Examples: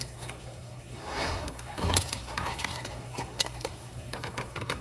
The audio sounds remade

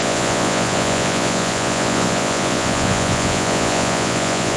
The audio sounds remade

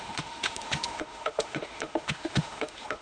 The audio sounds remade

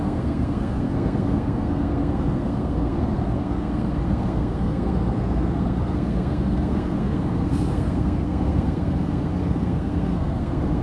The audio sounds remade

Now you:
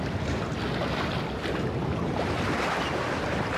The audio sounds recorded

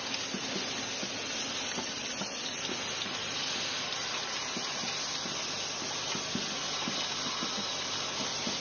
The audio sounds recorded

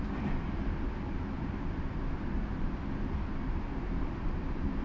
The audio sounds recorded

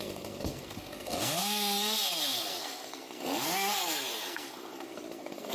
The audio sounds remade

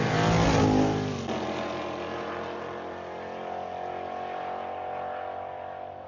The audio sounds recorded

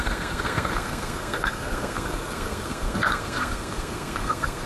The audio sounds remade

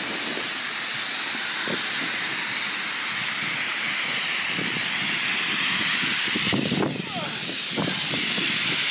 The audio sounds recorded